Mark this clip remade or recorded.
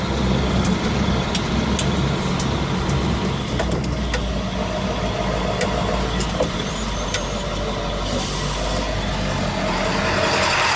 recorded